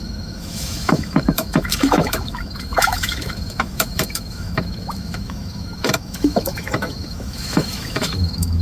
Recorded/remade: remade